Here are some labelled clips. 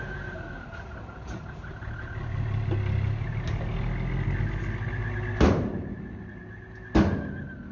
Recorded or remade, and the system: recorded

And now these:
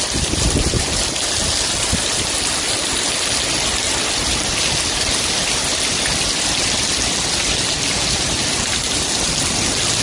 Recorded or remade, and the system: recorded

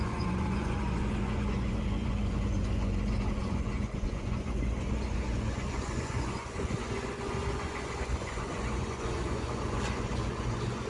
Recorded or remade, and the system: remade, vocoder, Vocos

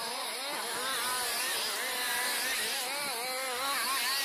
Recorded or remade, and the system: recorded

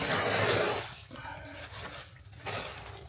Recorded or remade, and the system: recorded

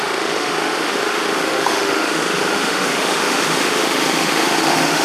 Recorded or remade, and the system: remade, autoencoder, DAC-VAE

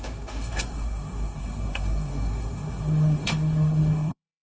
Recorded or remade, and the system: remade, codec, SNAC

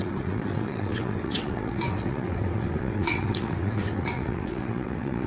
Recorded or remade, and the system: remade, vocoder, WaveNeXt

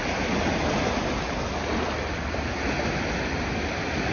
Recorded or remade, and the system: recorded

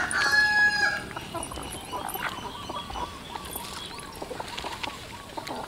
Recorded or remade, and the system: recorded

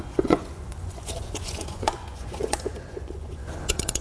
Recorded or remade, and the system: remade, vocoder, Vocos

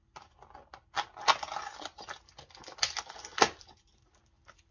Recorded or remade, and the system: recorded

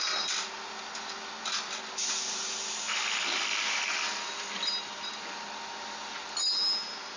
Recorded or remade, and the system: recorded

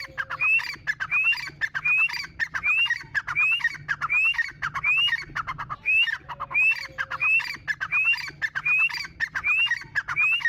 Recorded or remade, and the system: recorded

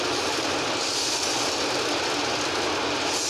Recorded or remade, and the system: recorded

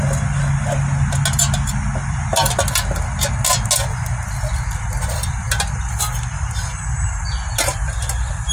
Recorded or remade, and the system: recorded